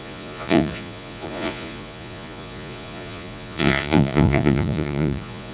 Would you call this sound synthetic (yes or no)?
yes